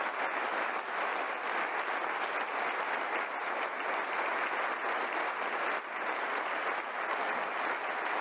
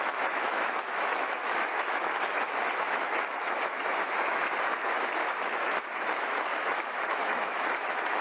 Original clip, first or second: first